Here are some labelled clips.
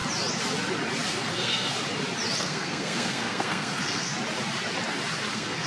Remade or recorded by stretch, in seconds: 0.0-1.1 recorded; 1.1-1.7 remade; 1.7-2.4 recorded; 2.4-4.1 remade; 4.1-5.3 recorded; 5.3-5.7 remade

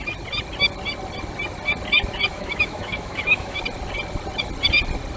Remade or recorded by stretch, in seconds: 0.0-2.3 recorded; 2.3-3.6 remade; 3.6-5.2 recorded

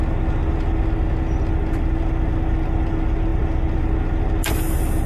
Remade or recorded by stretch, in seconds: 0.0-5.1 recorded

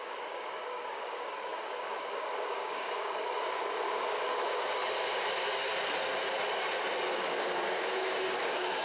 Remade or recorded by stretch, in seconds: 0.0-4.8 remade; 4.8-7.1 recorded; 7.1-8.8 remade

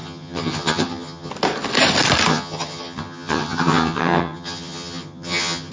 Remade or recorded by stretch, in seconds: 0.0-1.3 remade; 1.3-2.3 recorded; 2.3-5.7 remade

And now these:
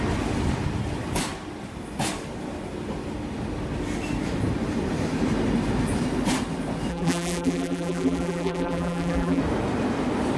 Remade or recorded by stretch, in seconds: 0.0-6.9 recorded; 6.9-9.4 remade; 9.4-10.4 recorded

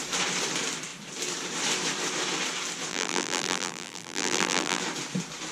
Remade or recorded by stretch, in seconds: 0.0-2.9 recorded; 2.9-4.8 remade; 4.8-5.5 recorded